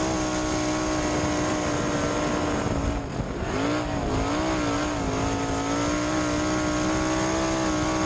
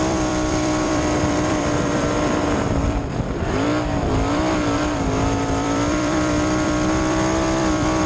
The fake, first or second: second